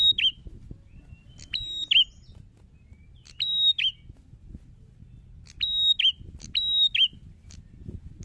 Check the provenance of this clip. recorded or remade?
recorded